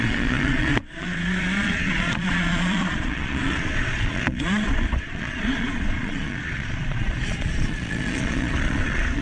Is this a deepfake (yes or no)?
yes